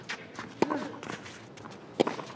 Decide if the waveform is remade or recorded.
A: recorded